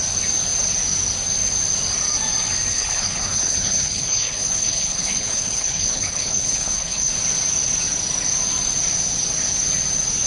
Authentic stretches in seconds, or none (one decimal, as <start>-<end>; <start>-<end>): 0.0-2.7; 7.1-10.3

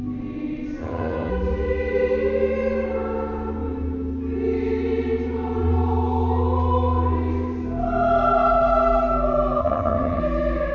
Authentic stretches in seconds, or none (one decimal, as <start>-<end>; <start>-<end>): 0.0-0.8; 1.3-9.6; 10.2-10.7